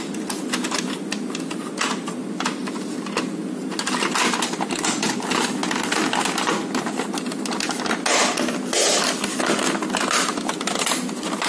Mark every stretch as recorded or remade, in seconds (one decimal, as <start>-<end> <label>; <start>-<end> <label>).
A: 0.0-11.5 recorded